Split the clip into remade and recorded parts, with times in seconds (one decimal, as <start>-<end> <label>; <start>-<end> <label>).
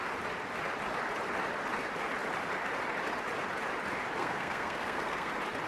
0.0-4.2 recorded; 4.2-5.3 remade; 5.3-5.7 recorded